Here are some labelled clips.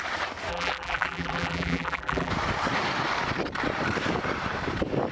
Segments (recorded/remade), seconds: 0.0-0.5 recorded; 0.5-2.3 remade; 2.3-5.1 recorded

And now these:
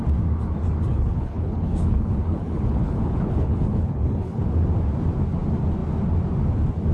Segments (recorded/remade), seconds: 0.0-0.9 recorded; 0.9-4.4 remade; 4.4-6.9 recorded

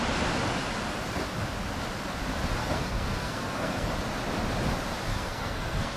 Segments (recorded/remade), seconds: 0.0-2.6 recorded; 2.6-3.9 remade; 3.9-5.1 recorded; 5.1-6.0 remade

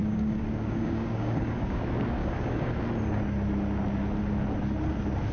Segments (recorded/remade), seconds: 0.0-1.8 remade; 1.8-2.2 recorded; 2.2-2.7 remade; 2.7-5.3 recorded

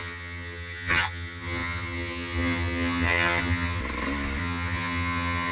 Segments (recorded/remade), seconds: 0.0-3.8 remade; 3.8-4.4 recorded; 4.4-5.5 remade

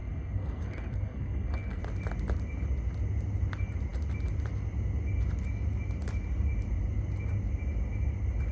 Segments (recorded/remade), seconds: 0.0-1.8 remade; 1.8-8.5 recorded

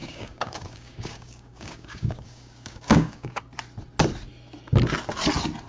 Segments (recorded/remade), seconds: 0.0-3.4 remade; 3.4-5.7 recorded